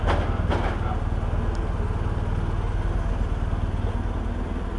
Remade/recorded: recorded